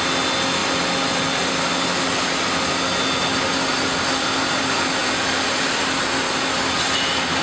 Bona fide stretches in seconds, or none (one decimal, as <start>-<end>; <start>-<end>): 0.0-7.4